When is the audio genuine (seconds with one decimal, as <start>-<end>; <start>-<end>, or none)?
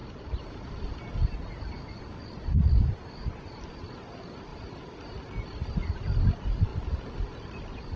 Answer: 0.0-8.0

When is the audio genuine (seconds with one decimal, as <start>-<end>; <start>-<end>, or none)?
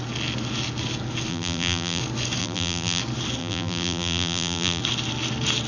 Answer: 0.0-1.3; 2.0-2.4; 3.0-3.4; 4.8-5.7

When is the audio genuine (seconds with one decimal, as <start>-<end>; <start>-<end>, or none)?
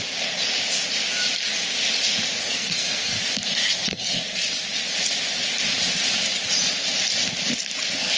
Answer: 0.0-2.4; 3.2-3.6; 4.2-8.2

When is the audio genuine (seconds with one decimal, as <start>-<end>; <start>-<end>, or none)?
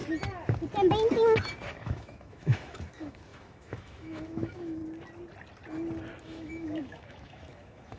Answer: 0.0-1.8; 4.8-6.2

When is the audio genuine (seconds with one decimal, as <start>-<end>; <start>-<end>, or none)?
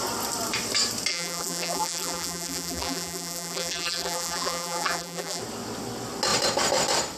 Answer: 0.0-1.1; 5.4-7.2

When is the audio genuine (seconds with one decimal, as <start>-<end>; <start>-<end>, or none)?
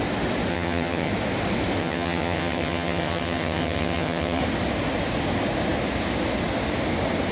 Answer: 0.0-0.5; 1.1-1.8; 4.4-7.3